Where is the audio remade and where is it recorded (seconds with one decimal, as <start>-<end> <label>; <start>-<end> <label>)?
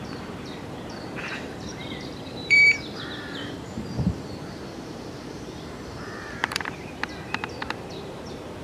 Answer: 0.0-8.6 remade